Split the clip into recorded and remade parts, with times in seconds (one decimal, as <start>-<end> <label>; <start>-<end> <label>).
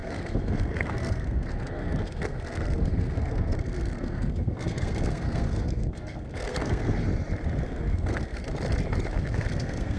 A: 0.0-7.0 remade; 7.0-7.6 recorded; 7.6-8.4 remade; 8.4-9.1 recorded; 9.1-10.0 remade